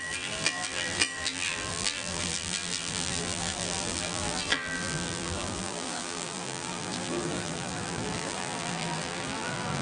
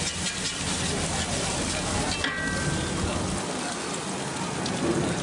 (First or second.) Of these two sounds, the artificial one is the first